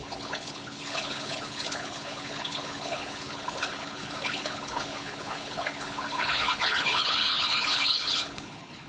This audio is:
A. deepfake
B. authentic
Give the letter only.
A